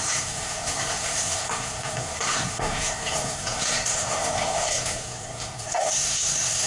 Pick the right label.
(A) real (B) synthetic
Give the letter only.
B